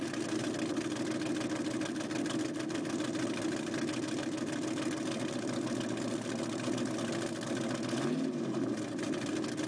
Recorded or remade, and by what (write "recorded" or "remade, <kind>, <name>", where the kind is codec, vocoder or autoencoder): recorded